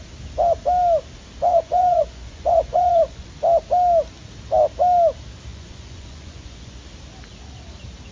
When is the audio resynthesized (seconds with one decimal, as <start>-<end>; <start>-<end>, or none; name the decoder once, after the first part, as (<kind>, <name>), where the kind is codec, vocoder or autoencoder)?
1.5-3.3 (vocoder, Vocos); 5.5-6.8

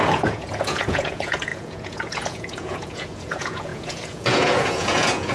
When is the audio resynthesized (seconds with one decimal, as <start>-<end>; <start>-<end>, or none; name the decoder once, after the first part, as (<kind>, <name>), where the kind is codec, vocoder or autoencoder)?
0.0-5.3 (vocoder, Vocos)